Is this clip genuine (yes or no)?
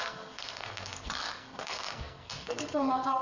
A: no